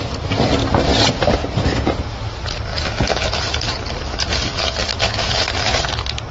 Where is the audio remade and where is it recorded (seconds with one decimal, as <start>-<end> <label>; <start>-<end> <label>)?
0.0-2.7 recorded; 2.7-3.4 remade; 3.4-4.9 recorded; 4.9-5.8 remade; 5.8-6.3 recorded

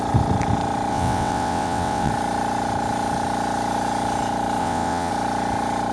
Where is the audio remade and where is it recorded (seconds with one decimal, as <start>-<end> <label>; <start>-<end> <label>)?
0.0-0.9 recorded; 0.9-2.1 remade; 2.1-4.6 recorded; 4.6-5.1 remade; 5.1-5.9 recorded

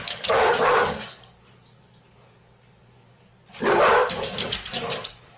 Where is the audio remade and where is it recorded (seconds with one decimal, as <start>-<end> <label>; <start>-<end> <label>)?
0.0-3.3 remade; 3.3-4.1 recorded; 4.1-5.4 remade

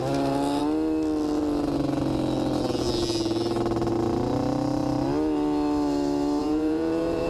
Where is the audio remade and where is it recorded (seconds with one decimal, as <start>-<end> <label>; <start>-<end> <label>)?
0.0-6.4 recorded; 6.4-7.3 remade

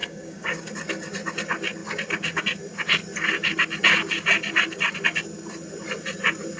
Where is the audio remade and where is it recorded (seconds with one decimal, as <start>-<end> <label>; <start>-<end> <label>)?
0.0-0.7 remade; 0.7-6.6 recorded